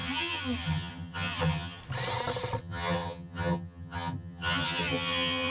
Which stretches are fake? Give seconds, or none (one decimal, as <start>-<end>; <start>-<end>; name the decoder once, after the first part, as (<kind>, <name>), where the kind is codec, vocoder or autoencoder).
0.0-1.8 (vocoder, HiFi-GAN); 2.6-5.5